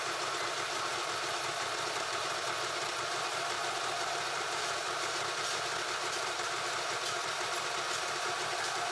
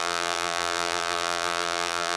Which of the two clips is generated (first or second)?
second